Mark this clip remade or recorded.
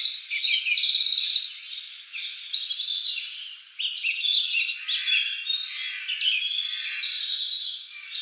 recorded